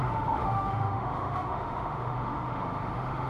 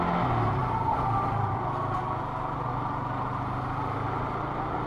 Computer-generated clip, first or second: first